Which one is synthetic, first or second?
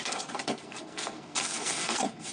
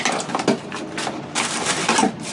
first